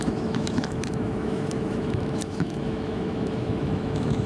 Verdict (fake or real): fake